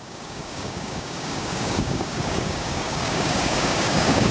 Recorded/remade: remade